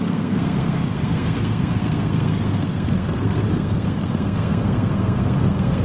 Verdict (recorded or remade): remade